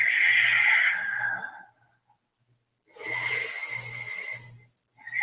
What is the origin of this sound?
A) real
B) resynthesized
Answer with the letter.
A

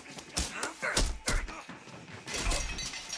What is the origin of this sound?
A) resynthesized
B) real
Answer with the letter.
B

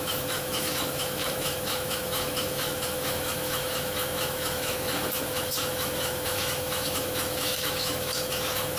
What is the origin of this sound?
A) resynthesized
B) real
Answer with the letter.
A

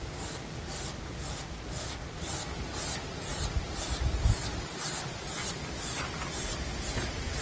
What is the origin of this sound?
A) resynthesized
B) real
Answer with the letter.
B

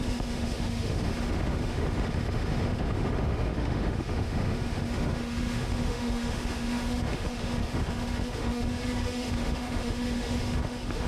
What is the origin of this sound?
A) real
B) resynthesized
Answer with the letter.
B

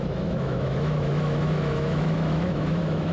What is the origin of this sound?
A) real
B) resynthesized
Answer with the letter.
B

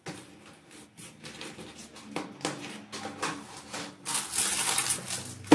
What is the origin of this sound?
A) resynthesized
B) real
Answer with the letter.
B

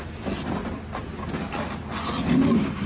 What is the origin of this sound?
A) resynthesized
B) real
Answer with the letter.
B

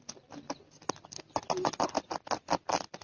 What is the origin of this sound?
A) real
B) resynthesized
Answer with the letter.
A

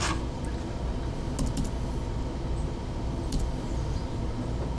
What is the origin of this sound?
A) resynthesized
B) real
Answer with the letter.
B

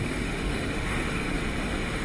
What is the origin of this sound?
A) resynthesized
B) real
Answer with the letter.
A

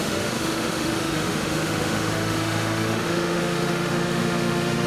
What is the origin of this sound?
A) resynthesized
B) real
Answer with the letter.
A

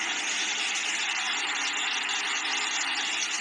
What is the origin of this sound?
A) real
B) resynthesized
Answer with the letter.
A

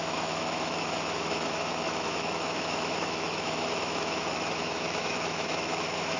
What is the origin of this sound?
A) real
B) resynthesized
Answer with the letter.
B